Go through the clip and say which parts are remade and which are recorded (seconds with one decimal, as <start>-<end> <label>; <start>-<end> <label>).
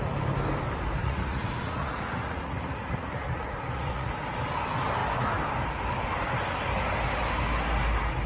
0.0-1.0 recorded; 1.0-4.1 remade; 4.1-8.3 recorded